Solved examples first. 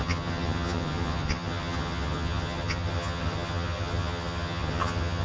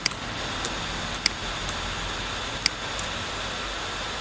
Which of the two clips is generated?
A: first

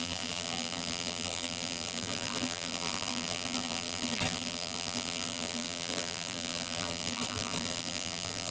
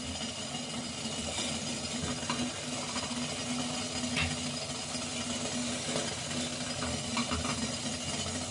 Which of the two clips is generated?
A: first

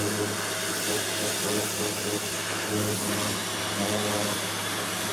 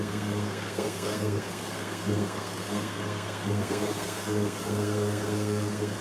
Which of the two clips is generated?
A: second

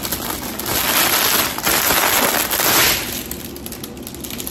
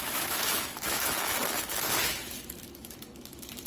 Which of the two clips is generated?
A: second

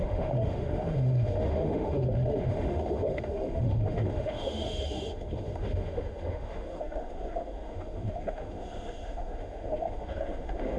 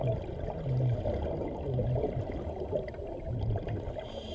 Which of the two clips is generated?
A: first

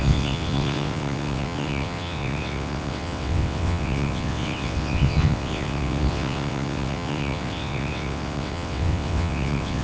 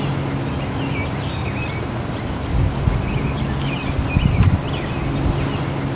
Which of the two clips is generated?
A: first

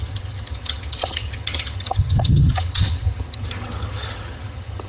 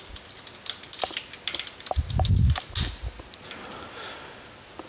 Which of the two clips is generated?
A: first